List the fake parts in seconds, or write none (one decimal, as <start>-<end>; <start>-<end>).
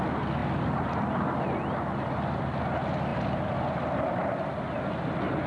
3.1-5.5